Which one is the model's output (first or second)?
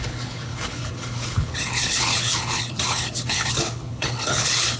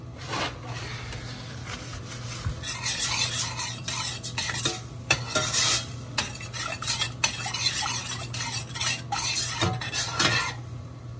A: first